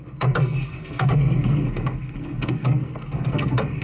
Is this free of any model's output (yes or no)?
no